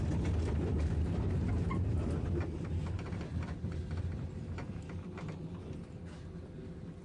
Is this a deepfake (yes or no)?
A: no